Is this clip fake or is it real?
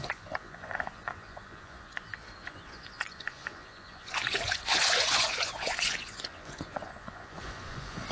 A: fake